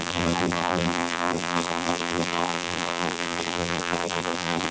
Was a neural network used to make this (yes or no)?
yes